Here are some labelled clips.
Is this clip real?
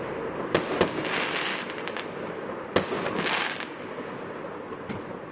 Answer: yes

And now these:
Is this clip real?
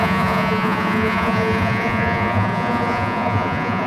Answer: no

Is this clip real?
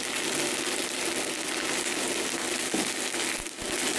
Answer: yes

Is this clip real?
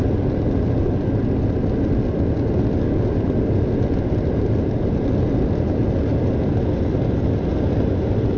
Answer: yes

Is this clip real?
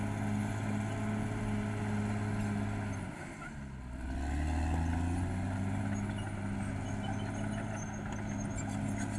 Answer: yes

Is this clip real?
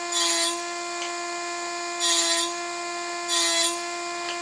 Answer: yes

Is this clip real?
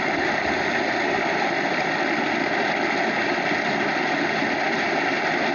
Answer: yes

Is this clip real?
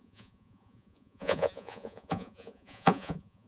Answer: no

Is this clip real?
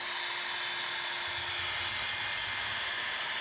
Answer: yes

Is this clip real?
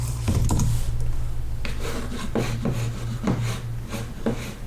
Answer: yes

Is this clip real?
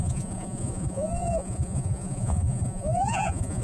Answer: no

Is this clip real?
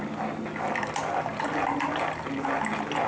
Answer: yes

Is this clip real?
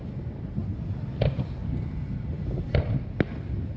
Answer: yes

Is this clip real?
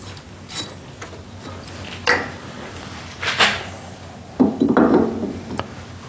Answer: yes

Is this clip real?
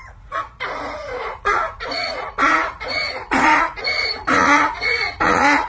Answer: no